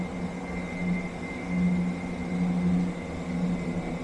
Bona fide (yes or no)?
yes